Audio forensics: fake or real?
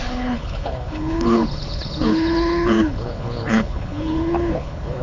fake